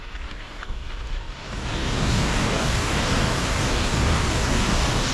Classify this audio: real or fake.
fake